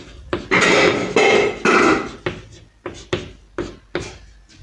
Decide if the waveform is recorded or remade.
recorded